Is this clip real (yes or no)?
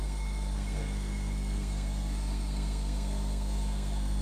no